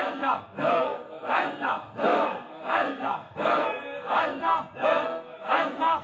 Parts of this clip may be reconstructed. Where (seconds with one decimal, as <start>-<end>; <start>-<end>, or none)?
0.0-6.0